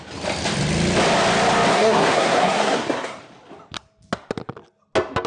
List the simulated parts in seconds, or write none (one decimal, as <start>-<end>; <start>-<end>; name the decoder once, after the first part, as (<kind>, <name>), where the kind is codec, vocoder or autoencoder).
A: 1.7-3.2 (codec, SNAC)